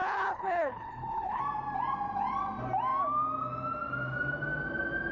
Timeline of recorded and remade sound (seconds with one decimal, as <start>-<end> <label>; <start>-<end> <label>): 0.0-1.4 remade; 1.4-5.1 recorded